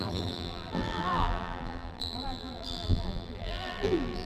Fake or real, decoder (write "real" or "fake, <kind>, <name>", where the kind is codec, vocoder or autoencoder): fake, vocoder, BigVGAN v2